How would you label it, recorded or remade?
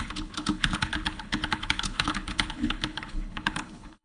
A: remade